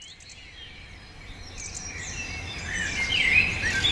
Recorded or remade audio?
recorded